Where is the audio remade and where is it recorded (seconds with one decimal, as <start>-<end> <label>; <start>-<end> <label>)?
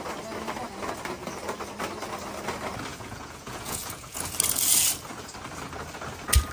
0.0-2.9 recorded; 2.9-4.3 remade; 4.3-6.5 recorded